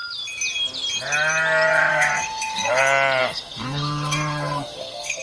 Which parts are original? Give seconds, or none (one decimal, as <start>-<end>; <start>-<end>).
0.0-1.9; 2.8-3.2